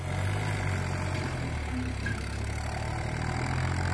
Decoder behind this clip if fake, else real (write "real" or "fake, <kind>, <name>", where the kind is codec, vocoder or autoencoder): real